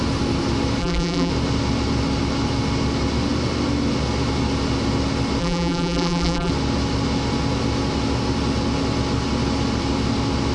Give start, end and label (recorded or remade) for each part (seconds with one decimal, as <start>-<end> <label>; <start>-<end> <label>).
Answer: 0.0-0.8 recorded; 0.8-1.3 remade; 1.3-5.4 recorded; 5.4-6.5 remade; 6.5-10.5 recorded